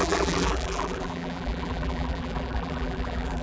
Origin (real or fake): fake